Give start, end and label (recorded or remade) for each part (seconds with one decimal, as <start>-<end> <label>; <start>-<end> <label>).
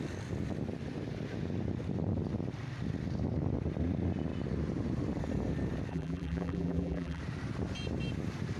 0.0-5.9 recorded; 5.9-7.2 remade; 7.2-8.6 recorded